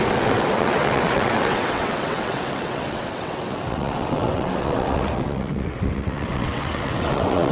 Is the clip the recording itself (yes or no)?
no